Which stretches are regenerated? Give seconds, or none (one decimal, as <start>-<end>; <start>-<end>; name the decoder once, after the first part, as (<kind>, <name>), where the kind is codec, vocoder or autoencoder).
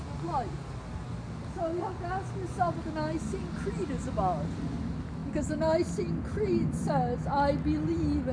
none